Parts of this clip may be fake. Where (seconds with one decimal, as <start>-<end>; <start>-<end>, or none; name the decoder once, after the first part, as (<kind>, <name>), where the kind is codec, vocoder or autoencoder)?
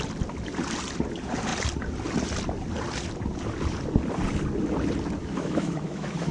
5.2-6.3 (autoencoder, DAC-VAE)